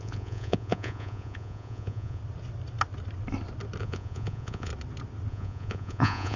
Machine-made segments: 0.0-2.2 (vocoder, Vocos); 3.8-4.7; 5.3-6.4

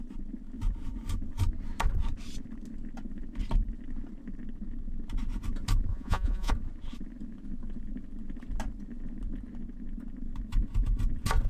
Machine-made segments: 5.9-6.5 (vocoder, Vocos)

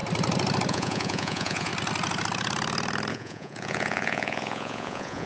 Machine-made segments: 0.7-1.7 (vocoder, Vocos); 3.1-5.3